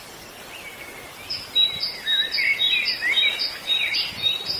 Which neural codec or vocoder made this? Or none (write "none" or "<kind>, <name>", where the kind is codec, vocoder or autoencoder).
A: none